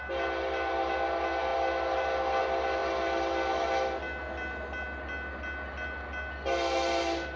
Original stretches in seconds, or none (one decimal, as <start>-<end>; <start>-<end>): 0.0-7.4